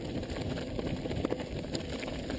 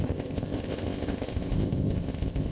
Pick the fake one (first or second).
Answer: second